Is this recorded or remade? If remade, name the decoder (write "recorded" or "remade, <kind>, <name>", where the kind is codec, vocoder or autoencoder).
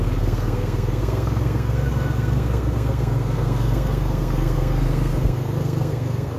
remade, codec, SNAC